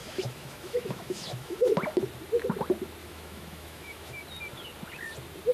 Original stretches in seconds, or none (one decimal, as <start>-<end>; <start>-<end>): 1.7-3.0; 4.2-5.5